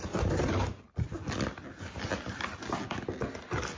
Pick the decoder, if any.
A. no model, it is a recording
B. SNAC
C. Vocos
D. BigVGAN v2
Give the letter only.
A